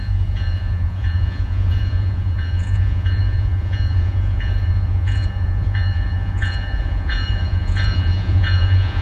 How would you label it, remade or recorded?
remade